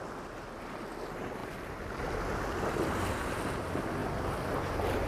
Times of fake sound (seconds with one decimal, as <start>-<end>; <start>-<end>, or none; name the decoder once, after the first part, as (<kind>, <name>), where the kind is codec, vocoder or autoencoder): none